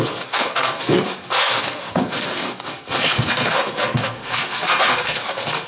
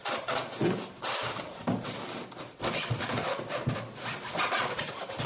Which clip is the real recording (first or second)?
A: second